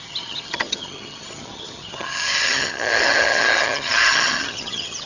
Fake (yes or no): yes